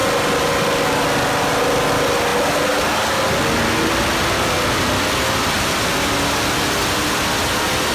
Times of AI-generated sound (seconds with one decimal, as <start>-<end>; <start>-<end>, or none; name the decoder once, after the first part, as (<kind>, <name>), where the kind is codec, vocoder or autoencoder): none